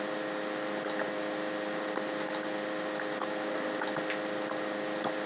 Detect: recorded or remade recorded